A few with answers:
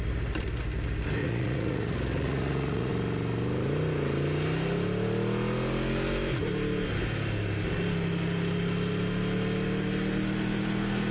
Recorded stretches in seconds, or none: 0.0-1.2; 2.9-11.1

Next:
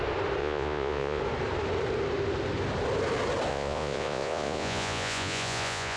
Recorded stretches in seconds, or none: 0.0-0.4; 1.2-3.5

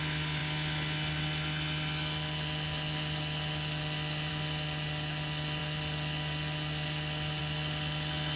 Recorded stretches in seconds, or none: 0.0-8.4

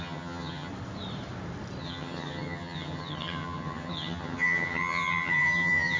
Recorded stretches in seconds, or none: 0.7-1.8